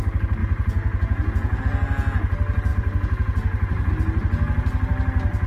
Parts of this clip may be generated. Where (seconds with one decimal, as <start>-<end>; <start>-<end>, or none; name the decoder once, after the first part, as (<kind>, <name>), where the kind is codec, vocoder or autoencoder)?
0.4-1.6 (vocoder, Vocos); 2.7-3.9